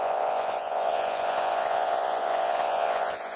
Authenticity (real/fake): fake